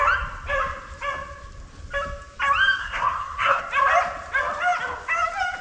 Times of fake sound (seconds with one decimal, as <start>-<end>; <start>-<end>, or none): 2.8-3.6